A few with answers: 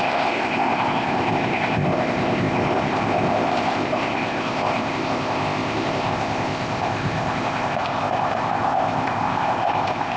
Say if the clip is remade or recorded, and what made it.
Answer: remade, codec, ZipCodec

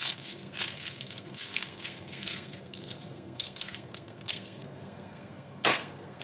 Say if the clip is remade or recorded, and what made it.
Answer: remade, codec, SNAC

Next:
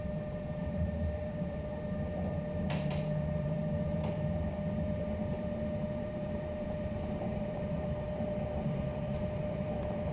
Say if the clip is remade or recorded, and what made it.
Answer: remade, vocoder, BigVGAN v2